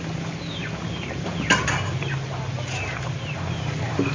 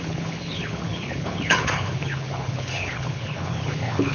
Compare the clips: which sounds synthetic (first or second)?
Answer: second